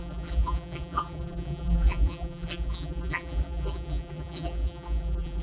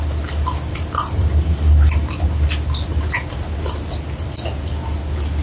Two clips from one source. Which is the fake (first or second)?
first